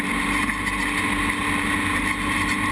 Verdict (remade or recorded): recorded